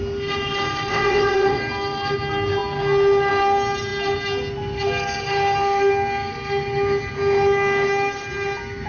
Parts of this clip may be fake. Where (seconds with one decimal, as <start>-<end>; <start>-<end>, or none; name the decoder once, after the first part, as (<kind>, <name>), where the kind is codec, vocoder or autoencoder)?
0.9-1.6 (vocoder, WaveNeXt)